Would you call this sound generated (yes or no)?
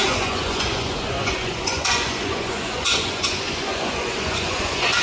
yes